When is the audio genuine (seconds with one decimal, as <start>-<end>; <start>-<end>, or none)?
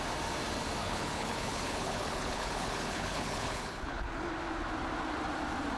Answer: 0.0-0.8; 4.3-5.8